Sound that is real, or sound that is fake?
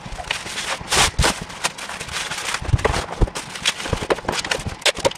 real